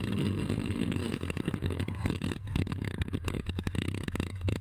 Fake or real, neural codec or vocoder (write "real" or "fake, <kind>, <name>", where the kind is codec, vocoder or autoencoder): fake, codec, SNAC